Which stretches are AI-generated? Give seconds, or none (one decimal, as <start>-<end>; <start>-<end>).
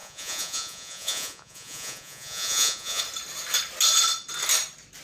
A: 0.0-3.0